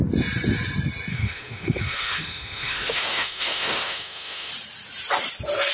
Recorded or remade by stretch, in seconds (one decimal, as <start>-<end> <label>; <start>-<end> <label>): 0.0-1.1 recorded; 1.1-4.5 remade; 4.5-5.7 recorded